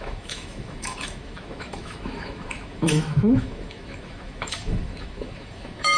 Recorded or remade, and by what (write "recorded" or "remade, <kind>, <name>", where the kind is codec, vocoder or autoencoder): remade, autoencoder, DAC-VAE